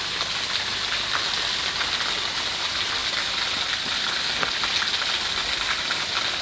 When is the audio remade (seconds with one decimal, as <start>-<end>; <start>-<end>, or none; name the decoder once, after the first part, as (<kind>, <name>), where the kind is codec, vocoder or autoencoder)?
none